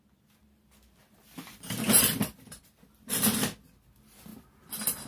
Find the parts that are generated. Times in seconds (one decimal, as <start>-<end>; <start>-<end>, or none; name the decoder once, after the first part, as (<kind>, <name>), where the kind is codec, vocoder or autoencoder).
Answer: none